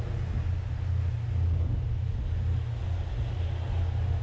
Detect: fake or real real